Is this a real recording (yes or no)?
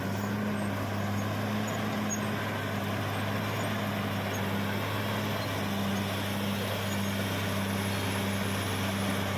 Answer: yes